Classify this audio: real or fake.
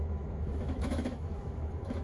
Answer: fake